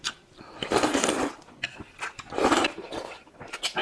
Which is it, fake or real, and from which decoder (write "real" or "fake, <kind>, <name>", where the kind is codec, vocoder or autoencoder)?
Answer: real